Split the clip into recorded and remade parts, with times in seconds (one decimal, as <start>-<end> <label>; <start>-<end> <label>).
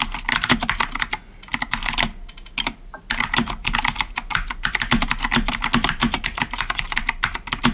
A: 0.0-5.8 recorded; 5.8-7.0 remade; 7.0-7.7 recorded